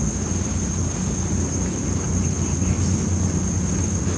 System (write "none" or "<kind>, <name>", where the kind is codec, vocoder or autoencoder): none